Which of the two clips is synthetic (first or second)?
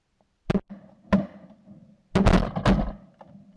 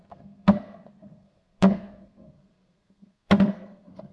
second